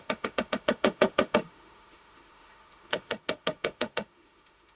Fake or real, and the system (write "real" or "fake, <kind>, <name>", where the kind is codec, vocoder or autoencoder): fake, autoencoder, DAC-VAE